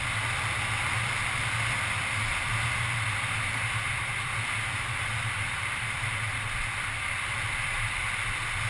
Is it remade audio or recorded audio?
recorded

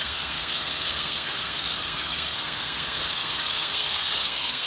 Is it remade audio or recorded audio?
remade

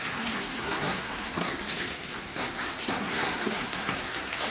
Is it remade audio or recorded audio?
remade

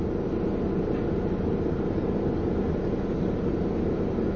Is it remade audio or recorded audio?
recorded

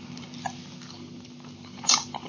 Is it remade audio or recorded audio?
recorded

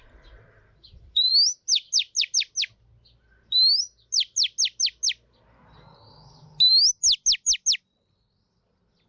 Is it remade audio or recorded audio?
recorded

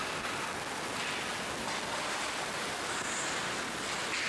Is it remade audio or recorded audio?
recorded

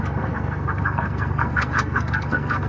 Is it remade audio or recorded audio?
remade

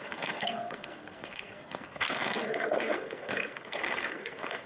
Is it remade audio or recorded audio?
remade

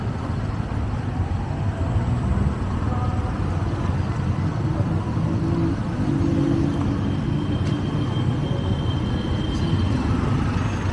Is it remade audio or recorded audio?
recorded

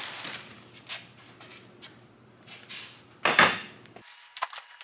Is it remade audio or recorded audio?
recorded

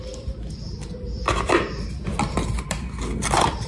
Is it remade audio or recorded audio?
recorded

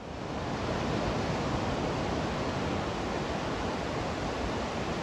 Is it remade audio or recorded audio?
recorded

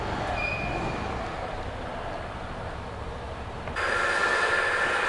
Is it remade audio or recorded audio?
recorded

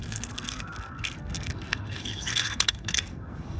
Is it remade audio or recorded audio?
remade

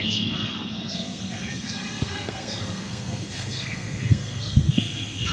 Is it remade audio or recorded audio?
remade